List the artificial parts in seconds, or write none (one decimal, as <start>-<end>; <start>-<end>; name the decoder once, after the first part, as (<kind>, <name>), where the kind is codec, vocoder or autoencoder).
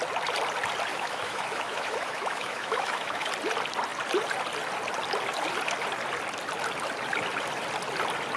0.9-3.3 (autoencoder, DAC-VAE)